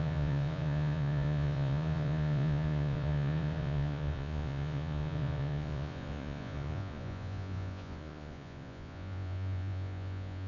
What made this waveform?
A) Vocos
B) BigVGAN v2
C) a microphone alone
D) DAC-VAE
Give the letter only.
A